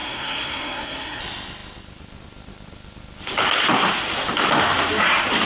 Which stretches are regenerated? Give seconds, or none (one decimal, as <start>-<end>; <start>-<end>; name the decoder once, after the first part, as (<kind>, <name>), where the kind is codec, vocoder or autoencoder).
0.0-1.2 (codec, SNAC)